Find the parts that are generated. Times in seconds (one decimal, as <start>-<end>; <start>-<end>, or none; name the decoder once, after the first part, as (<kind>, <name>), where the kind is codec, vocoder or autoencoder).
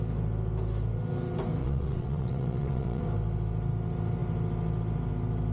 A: 1.6-3.0 (vocoder, WaveNeXt)